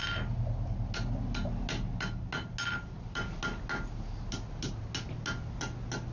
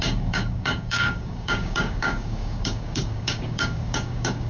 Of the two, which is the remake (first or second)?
second